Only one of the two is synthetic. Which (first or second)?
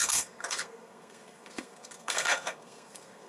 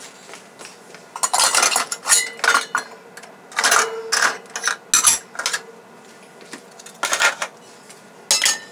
first